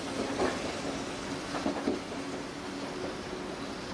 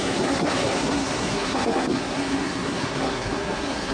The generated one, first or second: second